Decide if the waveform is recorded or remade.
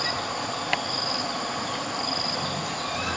recorded